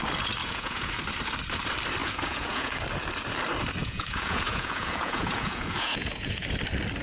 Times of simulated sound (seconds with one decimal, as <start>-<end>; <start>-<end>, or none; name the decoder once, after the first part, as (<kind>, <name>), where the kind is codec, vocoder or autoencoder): 0.4-0.9 (vocoder, Vocos); 2.0-2.8; 3.8-6.4